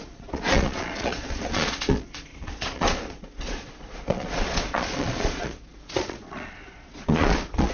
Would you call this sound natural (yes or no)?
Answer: no